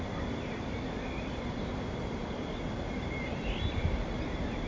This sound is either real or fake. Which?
real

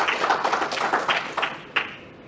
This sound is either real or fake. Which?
real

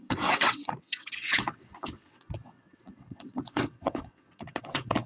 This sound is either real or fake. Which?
fake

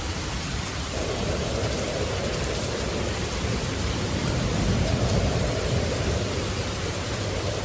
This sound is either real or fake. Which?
real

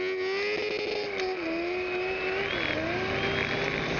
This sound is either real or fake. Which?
real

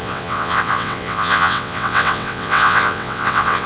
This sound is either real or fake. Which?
fake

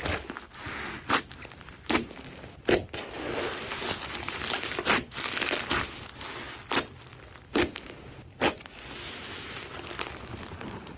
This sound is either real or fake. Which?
real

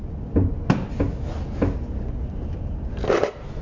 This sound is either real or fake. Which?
real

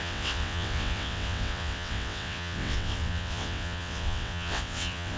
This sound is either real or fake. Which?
fake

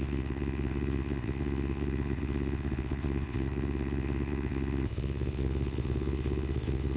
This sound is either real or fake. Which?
fake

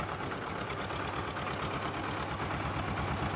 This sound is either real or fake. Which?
real